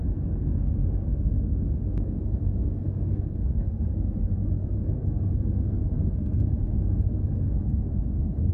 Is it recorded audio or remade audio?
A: remade